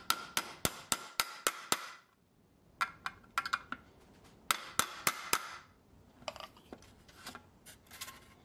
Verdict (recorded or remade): recorded